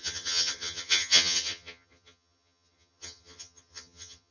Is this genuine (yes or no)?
no